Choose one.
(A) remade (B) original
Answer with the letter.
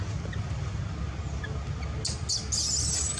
B